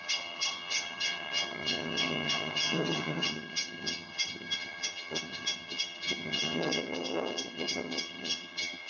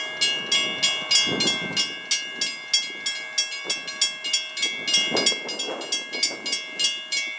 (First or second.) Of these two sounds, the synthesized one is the first